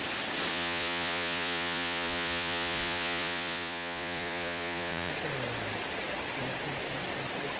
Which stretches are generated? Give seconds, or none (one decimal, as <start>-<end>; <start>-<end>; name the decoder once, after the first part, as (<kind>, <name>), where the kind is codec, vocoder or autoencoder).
0.5-5.1 (vocoder, Vocos)